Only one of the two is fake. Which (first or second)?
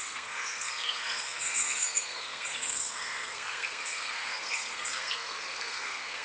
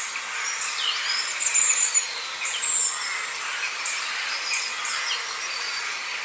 first